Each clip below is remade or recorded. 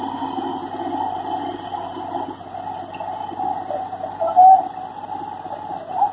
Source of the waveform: recorded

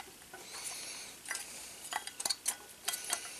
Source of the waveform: recorded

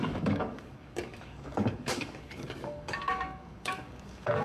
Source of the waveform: remade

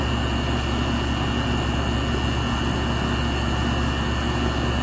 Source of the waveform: recorded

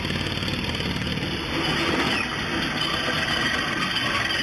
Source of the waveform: recorded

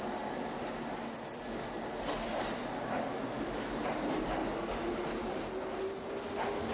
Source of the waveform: recorded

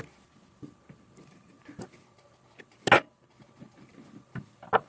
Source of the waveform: recorded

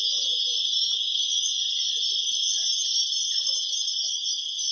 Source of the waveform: recorded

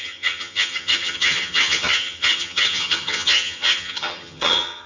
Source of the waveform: remade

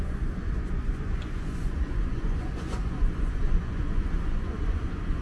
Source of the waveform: remade